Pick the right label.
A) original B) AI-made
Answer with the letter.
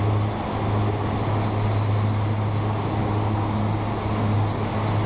A